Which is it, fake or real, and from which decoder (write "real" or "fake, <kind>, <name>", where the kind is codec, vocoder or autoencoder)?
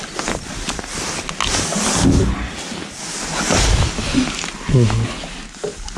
real